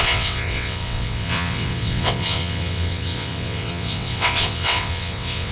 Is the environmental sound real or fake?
fake